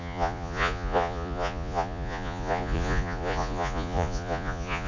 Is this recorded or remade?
remade